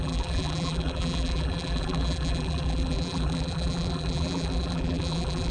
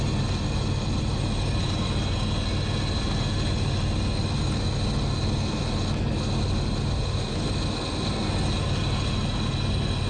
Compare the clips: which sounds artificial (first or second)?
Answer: first